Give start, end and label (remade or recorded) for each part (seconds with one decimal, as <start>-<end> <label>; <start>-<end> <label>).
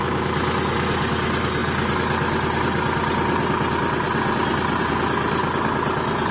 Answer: 0.0-6.3 recorded